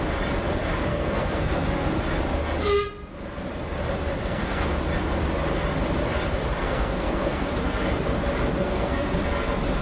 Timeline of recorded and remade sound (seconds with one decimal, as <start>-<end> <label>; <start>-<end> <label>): 0.0-0.9 recorded; 0.9-2.0 remade; 2.0-4.2 recorded; 4.2-4.8 remade; 4.8-6.6 recorded; 6.6-7.5 remade; 7.5-8.6 recorded; 8.6-9.2 remade; 9.2-9.8 recorded